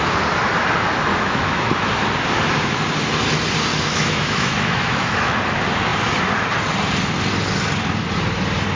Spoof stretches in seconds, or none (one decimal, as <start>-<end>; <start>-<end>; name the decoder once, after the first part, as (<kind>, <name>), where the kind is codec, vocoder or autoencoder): 1.1-1.9 (autoencoder, DAC-VAE); 3.7-5.4